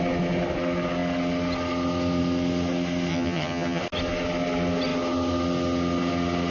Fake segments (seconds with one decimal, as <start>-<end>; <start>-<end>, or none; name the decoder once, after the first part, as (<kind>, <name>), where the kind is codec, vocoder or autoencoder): 3.1-3.8 (vocoder, HiFi-GAN)